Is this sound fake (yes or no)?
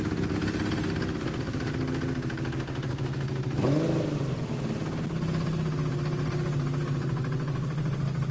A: no